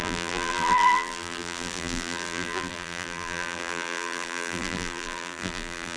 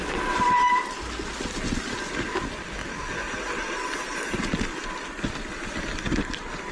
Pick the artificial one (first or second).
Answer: first